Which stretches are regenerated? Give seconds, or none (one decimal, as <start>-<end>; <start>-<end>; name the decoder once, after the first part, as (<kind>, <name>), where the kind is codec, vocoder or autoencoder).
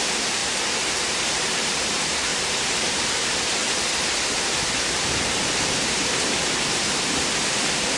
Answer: 0.0-3.6 (vocoder, BigVGAN v2); 4.8-8.0